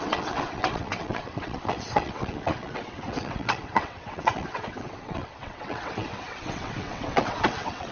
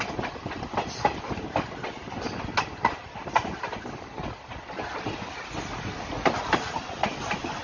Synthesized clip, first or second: first